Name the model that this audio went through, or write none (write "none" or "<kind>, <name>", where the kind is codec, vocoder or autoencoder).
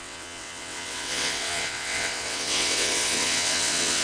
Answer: vocoder, WaveNeXt